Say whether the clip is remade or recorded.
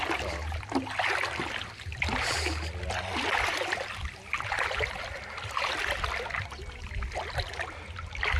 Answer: recorded